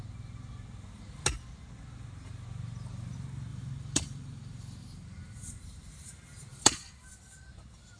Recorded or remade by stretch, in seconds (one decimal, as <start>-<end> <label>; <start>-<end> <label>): 0.0-3.5 recorded; 3.5-5.5 remade; 5.5-6.5 recorded; 6.5-7.2 remade; 7.2-8.0 recorded